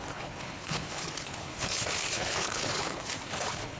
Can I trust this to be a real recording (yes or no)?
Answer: no